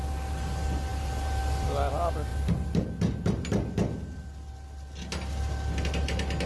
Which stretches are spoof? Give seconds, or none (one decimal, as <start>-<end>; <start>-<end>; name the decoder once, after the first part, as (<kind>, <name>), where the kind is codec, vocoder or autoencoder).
none